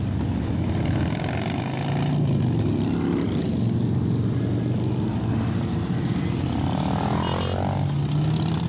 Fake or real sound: real